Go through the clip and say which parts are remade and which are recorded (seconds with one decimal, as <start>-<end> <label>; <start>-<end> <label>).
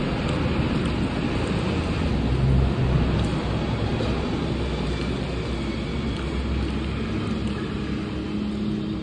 0.0-9.0 recorded